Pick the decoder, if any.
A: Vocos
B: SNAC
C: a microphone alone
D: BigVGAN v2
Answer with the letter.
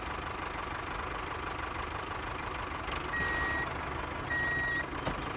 C